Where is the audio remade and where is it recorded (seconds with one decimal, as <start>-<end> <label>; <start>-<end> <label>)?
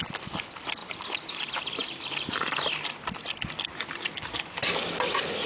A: 0.0-5.5 recorded